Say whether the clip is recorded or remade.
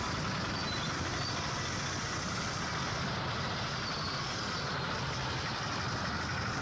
recorded